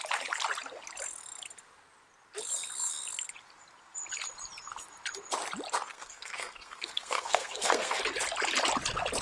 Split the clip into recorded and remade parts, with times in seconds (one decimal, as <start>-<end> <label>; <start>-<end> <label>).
0.0-5.9 recorded; 5.9-8.0 remade; 8.0-9.2 recorded